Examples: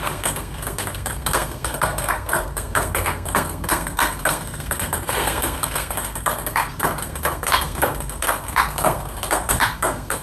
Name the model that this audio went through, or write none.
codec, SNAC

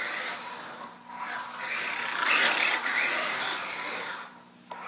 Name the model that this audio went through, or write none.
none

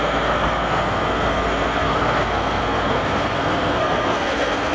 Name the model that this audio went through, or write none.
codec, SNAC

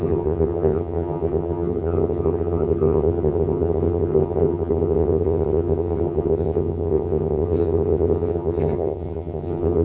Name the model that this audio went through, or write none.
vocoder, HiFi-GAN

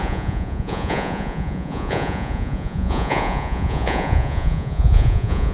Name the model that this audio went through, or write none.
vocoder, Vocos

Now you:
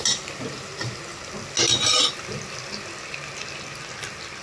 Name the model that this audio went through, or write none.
none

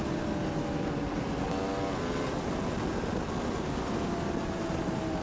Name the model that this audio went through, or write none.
none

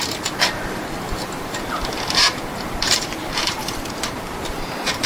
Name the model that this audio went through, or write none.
vocoder, BigVGAN v2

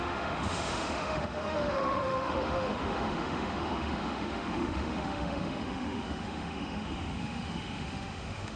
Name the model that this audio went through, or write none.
autoencoder, DAC-VAE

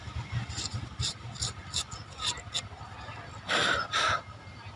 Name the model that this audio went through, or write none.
none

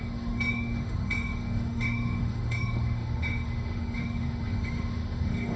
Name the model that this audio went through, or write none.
autoencoder, DAC-VAE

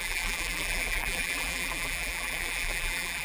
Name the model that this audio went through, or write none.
vocoder, BigVGAN v2